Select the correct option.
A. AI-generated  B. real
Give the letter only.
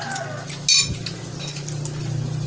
B